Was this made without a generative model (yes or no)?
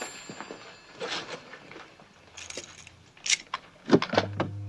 yes